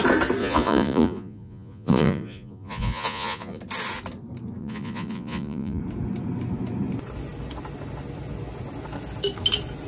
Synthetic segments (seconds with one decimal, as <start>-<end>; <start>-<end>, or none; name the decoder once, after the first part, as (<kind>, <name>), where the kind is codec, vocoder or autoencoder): 0.4-3.6 (vocoder, Vocos); 4.6-5.8